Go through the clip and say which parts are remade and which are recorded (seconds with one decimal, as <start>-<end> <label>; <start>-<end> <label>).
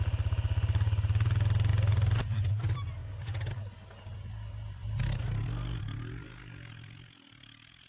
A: 0.0-7.9 recorded